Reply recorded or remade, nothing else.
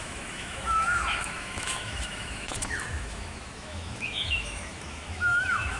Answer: remade